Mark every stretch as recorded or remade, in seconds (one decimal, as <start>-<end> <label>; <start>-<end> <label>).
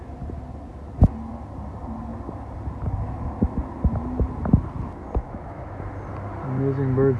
0.0-5.2 recorded; 5.2-5.8 remade; 5.8-7.2 recorded